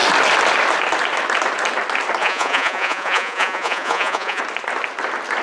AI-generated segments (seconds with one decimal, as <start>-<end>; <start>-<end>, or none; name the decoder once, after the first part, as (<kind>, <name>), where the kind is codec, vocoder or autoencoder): 2.2-4.4 (vocoder, Vocos)